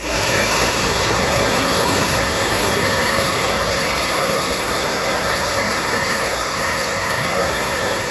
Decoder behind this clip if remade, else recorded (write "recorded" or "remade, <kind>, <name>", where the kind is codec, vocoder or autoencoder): remade, codec, SNAC